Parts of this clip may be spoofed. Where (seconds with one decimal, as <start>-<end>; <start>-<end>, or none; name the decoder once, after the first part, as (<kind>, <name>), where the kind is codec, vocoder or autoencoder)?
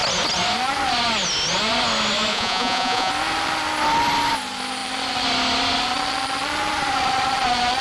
2.3-3.1 (vocoder, Vocos)